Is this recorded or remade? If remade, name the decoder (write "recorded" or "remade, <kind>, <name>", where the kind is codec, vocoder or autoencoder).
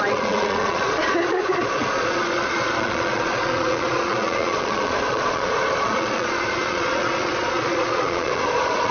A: remade, vocoder, Vocos